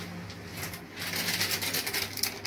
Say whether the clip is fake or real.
real